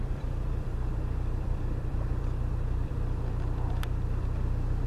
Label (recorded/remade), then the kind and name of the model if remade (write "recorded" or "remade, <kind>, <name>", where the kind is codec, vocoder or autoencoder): remade, vocoder, BigVGAN v2